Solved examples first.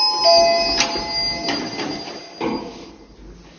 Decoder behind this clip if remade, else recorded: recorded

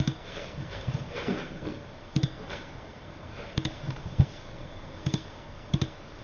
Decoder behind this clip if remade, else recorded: remade, codec, SNAC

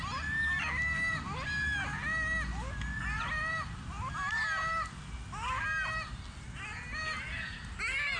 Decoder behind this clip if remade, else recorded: recorded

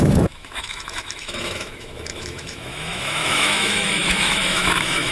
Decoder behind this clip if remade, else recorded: remade, autoencoder, DAC-VAE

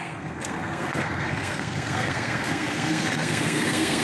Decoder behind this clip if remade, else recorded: remade, codec, SNAC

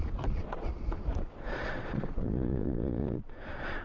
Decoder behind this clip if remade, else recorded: remade, vocoder, Vocos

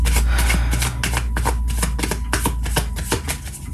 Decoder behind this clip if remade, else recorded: recorded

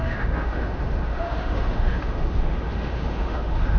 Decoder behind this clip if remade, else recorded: remade, autoencoder, DAC-VAE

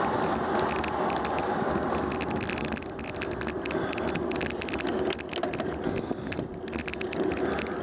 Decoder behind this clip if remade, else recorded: recorded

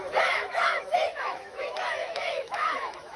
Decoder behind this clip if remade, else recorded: remade, autoencoder, DAC-VAE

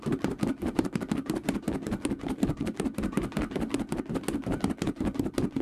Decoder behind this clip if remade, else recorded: recorded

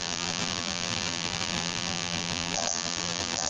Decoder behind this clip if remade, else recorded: remade, vocoder, BigVGAN v2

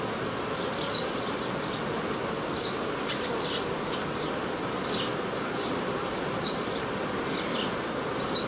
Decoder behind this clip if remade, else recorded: recorded